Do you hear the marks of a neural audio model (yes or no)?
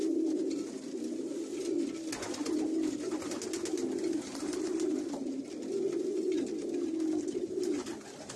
no